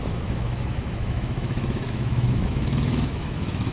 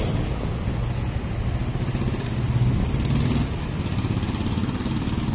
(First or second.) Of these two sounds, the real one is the second